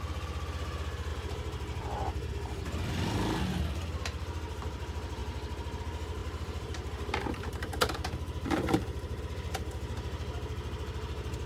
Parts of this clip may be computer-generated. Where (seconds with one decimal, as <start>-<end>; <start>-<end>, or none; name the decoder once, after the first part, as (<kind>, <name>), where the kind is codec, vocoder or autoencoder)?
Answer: 1.1-2.3 (vocoder, BigVGAN v2); 6.2-9.2